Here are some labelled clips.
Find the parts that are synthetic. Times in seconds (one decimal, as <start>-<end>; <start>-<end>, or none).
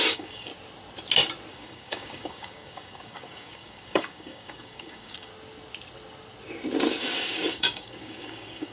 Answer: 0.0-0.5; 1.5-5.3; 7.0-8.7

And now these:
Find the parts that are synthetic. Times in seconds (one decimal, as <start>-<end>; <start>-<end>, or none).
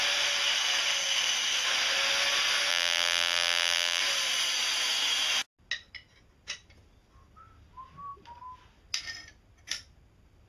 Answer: 2.7-4.0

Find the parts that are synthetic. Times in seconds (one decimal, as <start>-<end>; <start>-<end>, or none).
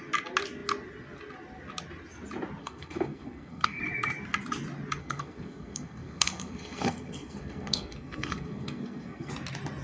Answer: 2.6-3.8; 5.0-9.3